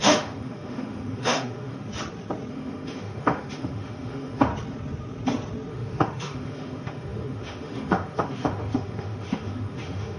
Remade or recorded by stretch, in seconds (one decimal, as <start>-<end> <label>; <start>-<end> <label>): 0.0-1.9 remade; 1.9-2.5 recorded; 2.5-4.5 remade; 4.5-5.7 recorded; 5.7-10.2 remade